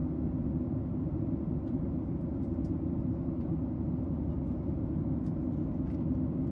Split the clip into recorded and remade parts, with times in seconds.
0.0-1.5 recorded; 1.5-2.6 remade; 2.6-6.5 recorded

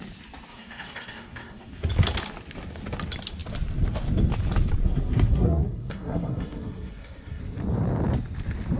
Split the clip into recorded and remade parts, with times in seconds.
0.0-0.5 recorded; 0.5-1.9 remade; 1.9-4.8 recorded; 4.8-7.4 remade; 7.4-8.8 recorded

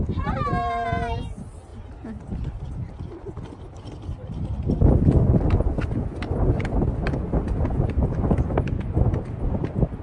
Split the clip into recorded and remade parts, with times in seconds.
0.0-10.0 recorded

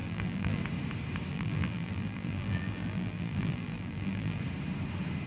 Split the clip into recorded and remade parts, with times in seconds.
0.0-0.6 remade; 0.6-1.3 recorded; 1.3-4.4 remade; 4.4-5.3 recorded